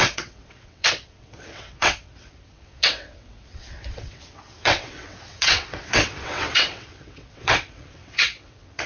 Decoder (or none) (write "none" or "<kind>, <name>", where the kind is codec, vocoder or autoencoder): vocoder, WaveNeXt